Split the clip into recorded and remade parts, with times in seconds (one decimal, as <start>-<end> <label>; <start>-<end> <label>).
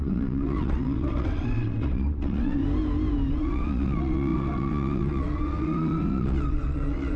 0.0-2.6 remade; 2.6-3.3 recorded; 3.3-7.2 remade